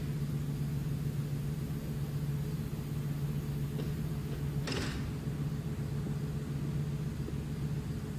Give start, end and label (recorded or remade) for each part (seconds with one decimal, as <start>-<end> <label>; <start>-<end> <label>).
0.0-8.2 recorded